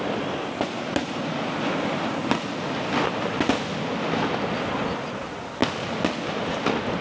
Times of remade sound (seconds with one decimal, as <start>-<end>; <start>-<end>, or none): none